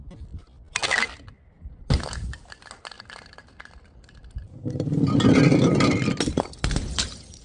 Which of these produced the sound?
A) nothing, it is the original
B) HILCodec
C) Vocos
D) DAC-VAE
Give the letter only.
A